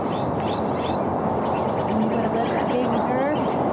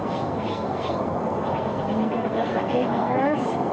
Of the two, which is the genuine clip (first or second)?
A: first